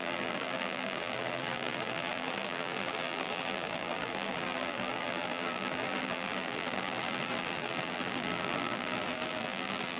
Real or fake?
fake